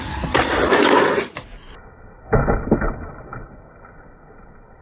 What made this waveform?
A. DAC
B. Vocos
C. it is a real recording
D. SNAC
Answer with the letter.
C